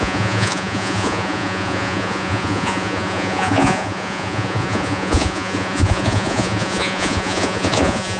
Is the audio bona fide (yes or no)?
no